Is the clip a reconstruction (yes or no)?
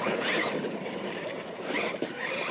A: yes